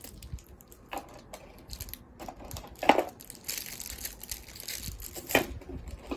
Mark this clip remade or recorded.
recorded